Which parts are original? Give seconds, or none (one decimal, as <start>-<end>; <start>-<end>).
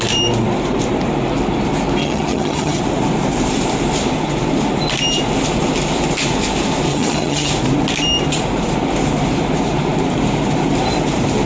0.0-2.0; 2.8-6.9; 7.5-11.5